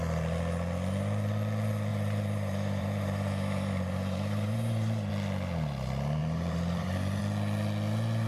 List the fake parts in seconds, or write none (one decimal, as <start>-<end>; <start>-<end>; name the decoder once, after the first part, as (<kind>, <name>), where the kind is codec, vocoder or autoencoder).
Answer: 1.9-5.1 (vocoder, BigVGAN v2); 6.2-7.2